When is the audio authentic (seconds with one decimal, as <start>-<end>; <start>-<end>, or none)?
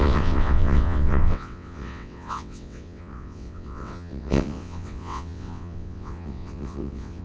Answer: none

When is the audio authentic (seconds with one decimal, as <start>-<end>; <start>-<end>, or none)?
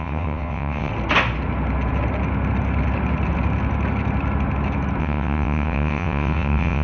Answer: 0.9-5.0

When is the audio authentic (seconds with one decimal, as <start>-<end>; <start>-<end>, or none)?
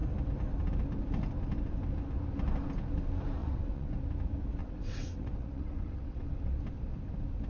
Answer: 0.0-3.4; 3.9-4.6; 6.3-7.5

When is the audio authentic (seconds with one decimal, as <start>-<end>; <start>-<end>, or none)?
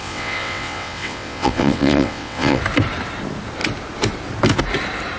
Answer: 2.6-5.2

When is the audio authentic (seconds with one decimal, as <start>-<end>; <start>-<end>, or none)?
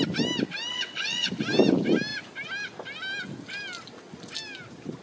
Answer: 0.0-0.7; 1.3-5.0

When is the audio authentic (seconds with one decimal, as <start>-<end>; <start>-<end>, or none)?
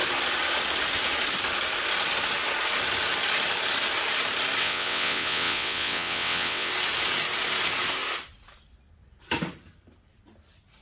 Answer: 0.0-4.6; 6.7-10.8